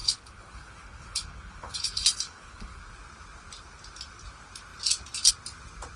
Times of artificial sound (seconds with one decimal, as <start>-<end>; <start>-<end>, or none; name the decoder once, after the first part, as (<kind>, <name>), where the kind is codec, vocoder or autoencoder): 0.0-2.8 (codec, HILCodec)